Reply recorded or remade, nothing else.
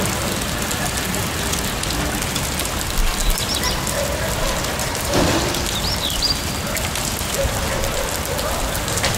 recorded